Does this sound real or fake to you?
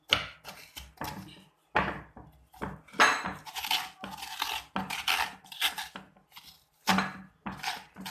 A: real